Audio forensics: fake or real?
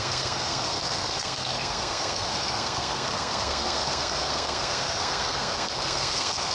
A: fake